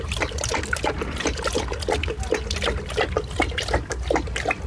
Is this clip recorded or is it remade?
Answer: recorded